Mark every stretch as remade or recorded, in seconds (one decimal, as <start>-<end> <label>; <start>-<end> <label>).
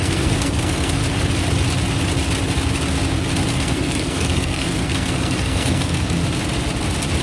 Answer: 0.0-1.0 remade; 1.0-3.5 recorded; 3.5-6.2 remade; 6.2-7.2 recorded